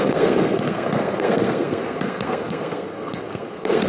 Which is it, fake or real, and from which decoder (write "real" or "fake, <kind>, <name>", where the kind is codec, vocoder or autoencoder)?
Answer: fake, codec, SNAC